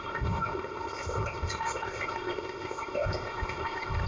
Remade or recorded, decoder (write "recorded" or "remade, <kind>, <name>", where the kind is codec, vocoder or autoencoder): remade, codec, ZipCodec